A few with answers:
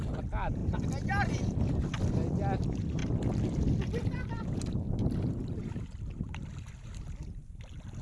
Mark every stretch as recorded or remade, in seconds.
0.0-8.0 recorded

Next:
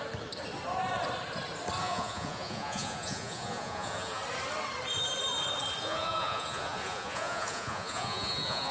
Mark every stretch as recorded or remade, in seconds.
0.0-1.8 recorded; 1.8-4.2 remade; 4.2-5.8 recorded; 5.8-8.7 remade